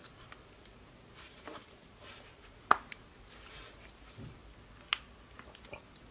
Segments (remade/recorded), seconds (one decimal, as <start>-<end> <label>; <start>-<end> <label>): 0.0-4.4 remade; 4.4-6.1 recorded